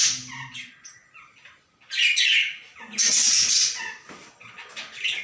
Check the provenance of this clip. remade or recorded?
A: recorded